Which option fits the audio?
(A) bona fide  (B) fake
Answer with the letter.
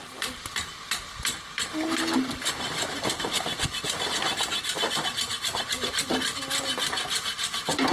B